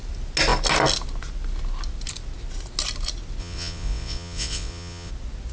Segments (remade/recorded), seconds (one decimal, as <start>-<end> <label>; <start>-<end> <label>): 0.0-3.4 recorded; 3.4-5.1 remade; 5.1-5.5 recorded